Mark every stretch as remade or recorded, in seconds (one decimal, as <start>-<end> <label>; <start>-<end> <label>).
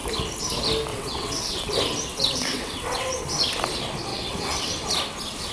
0.0-0.9 recorded; 0.9-1.7 remade; 1.7-2.1 recorded; 2.1-3.1 remade; 3.1-4.1 recorded; 4.1-4.7 remade; 4.7-5.5 recorded